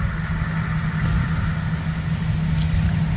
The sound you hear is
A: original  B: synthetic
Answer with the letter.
A